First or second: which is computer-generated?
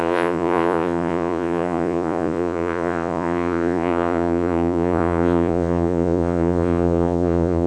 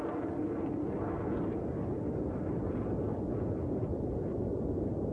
first